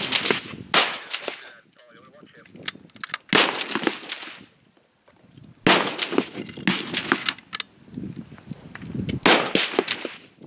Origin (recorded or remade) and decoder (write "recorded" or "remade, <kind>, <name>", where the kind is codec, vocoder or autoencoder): recorded